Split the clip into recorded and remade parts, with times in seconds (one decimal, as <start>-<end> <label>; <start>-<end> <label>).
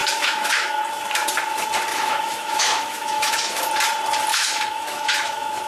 0.0-0.8 remade; 0.8-1.9 recorded; 1.9-3.7 remade; 3.7-4.3 recorded; 4.3-5.7 remade